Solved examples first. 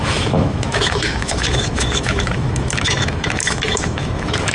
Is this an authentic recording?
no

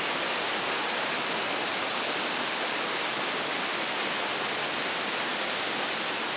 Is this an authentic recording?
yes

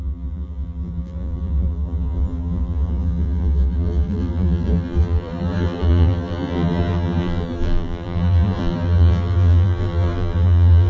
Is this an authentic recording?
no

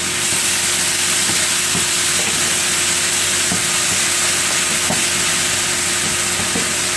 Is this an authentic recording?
yes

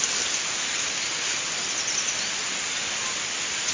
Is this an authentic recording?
yes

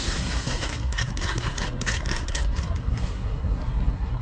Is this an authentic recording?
no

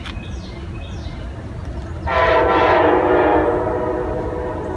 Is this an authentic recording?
yes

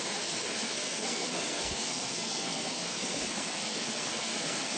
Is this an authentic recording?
no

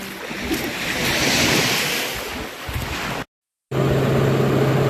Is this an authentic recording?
yes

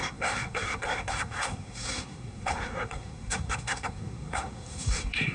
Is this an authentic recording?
no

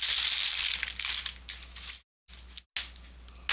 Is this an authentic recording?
yes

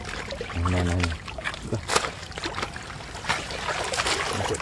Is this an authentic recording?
yes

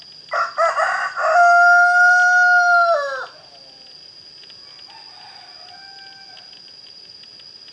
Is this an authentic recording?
yes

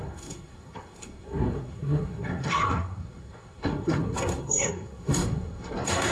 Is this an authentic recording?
no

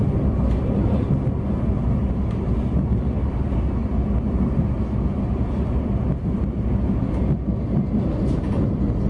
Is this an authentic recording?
yes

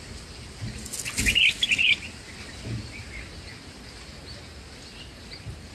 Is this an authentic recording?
yes